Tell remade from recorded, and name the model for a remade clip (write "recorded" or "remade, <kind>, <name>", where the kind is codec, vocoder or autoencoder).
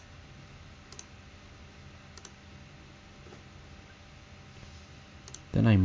recorded